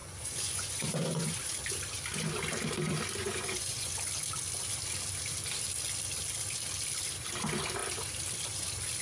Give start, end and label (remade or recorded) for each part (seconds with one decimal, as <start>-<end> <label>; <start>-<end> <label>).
0.0-1.4 remade; 1.4-3.2 recorded; 3.2-3.9 remade; 3.9-9.0 recorded